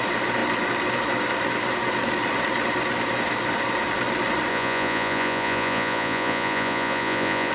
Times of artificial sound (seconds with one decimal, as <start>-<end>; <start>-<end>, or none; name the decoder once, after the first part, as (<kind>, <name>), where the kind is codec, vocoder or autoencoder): 4.5-7.5 (vocoder, Vocos)